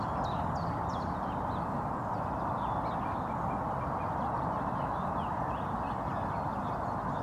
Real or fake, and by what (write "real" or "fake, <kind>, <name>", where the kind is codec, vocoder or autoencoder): real